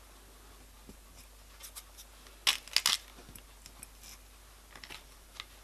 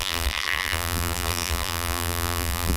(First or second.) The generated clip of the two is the second